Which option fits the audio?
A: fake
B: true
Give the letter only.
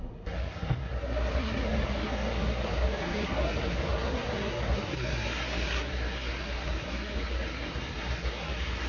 A